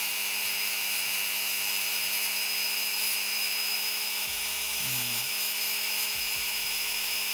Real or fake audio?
fake